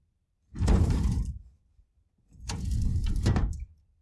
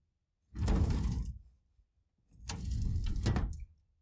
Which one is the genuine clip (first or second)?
second